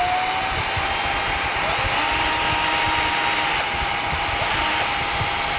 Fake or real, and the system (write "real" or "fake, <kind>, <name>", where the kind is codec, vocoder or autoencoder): real